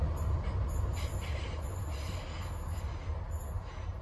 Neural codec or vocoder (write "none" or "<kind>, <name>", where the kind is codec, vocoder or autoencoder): none